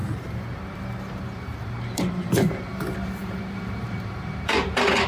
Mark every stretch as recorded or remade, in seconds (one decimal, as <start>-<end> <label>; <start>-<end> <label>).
0.0-5.1 remade